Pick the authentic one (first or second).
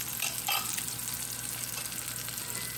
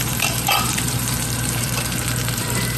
first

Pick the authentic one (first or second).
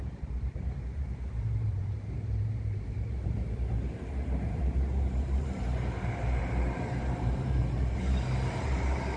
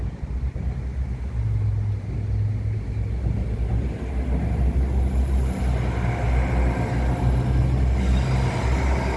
second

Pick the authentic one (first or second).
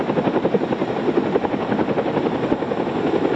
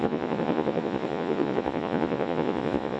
first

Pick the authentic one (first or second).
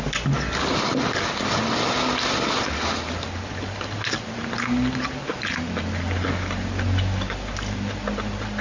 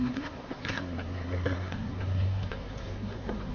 first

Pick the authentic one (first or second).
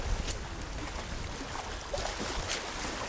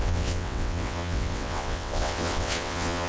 first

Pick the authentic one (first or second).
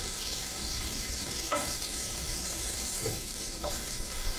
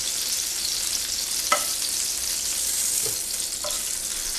second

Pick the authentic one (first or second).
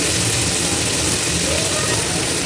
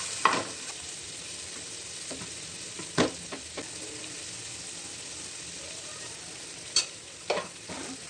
first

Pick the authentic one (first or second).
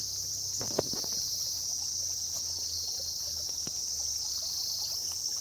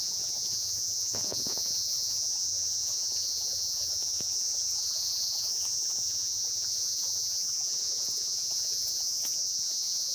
first